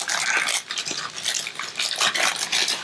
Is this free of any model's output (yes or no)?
yes